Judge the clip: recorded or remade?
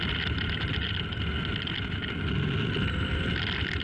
recorded